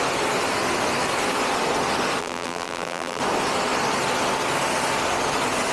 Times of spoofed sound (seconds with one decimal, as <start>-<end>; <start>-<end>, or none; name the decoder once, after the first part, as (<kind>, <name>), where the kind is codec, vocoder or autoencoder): 2.2-3.2 (vocoder, BigVGAN v2)